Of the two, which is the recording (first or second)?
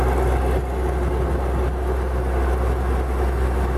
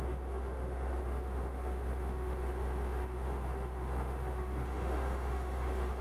first